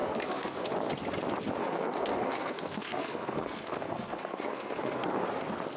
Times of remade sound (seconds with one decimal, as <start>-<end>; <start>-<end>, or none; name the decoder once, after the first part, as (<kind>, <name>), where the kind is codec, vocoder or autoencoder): 0.0-0.7 (codec, SNAC); 1.6-5.1